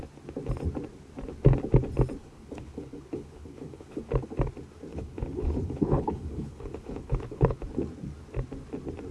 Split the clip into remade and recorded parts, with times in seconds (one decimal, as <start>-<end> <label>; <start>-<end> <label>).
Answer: 0.0-2.2 recorded; 2.2-4.0 remade; 4.0-4.9 recorded; 4.9-7.6 remade; 7.6-9.1 recorded